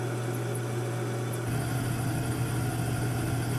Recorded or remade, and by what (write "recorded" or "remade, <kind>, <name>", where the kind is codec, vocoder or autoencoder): recorded